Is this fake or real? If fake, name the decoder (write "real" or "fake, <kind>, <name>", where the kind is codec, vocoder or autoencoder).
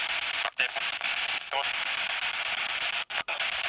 real